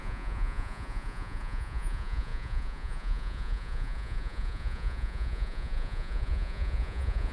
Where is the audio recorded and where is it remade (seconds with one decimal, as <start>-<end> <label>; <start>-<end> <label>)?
0.0-7.3 remade